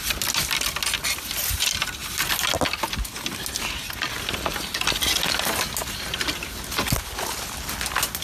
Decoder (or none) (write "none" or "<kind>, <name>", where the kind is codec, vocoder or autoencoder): none